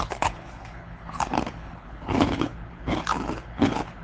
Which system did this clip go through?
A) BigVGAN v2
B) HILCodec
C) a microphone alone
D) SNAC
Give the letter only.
B